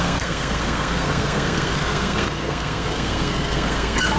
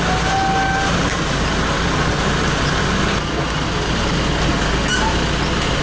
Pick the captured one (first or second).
second